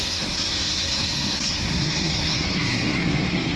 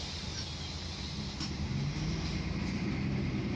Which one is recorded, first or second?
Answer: second